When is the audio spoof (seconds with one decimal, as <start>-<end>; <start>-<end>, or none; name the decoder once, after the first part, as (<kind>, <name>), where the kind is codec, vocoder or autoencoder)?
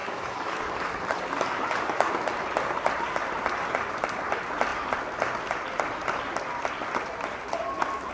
0.0-2.1 (codec, DAC)